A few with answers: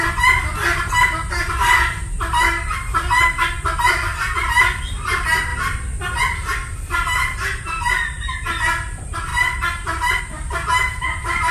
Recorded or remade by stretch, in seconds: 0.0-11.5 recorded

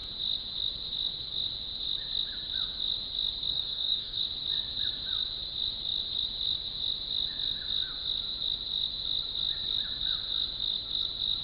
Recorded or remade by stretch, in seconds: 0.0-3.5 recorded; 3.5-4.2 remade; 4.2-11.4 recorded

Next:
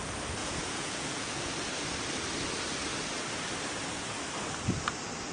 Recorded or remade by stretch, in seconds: 0.0-0.4 recorded; 0.4-1.5 remade; 1.5-5.3 recorded

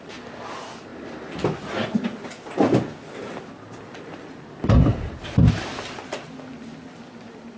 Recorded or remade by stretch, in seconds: 0.0-7.6 recorded

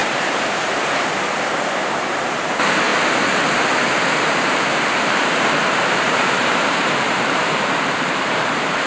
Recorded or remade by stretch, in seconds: 0.0-2.9 remade; 2.9-4.2 recorded; 4.2-8.9 remade

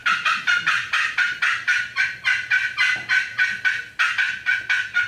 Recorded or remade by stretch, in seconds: 0.0-5.1 recorded

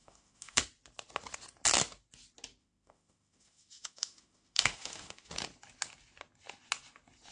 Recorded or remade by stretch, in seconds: 0.0-0.6 remade; 0.6-2.6 recorded; 2.6-5.3 remade; 5.3-7.3 recorded

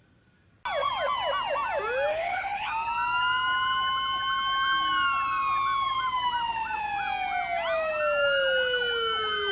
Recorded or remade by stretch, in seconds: 0.0-2.1 recorded; 2.1-2.7 remade; 2.7-9.5 recorded